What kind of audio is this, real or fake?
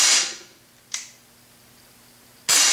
real